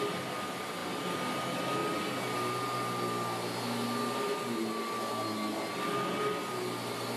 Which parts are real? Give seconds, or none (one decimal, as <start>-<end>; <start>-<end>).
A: 0.0-7.2